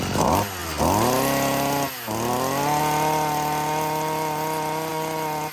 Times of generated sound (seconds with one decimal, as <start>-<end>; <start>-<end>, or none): none